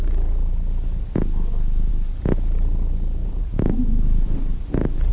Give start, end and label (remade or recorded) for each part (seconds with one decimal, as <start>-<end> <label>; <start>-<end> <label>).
0.0-3.2 recorded; 3.2-5.1 remade